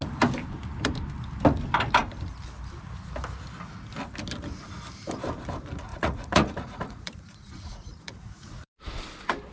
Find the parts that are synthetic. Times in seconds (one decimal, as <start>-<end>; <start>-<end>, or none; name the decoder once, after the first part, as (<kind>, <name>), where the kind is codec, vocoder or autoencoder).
5.9-8.7 (vocoder, Vocos)